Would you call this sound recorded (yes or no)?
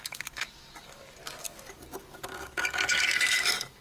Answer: no